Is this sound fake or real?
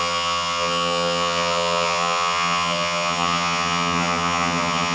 fake